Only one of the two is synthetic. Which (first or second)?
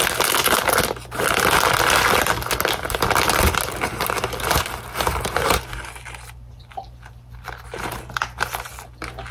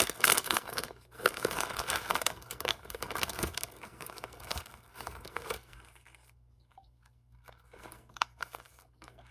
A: second